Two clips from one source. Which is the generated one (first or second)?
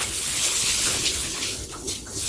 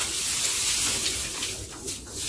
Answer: first